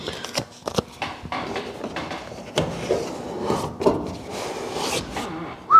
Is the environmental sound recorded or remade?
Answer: remade